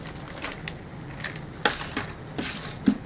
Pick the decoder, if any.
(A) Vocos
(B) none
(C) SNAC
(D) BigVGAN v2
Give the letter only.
B